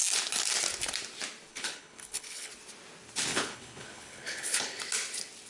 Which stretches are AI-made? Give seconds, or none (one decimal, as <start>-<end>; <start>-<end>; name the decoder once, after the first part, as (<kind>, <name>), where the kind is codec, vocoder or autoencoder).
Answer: 1.5-2.5 (codec, HILCodec); 3.3-4.8